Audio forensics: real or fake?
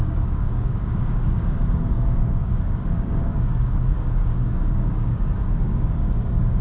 fake